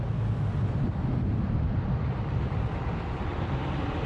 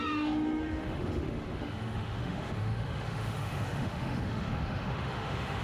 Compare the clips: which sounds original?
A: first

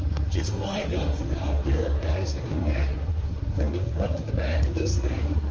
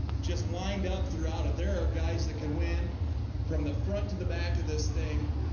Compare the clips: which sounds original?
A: second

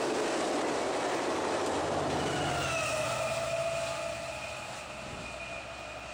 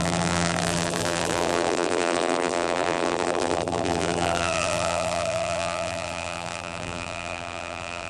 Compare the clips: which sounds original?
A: first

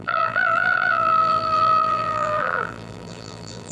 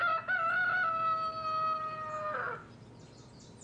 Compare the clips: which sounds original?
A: second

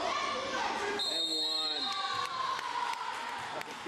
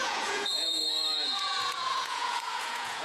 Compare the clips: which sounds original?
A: first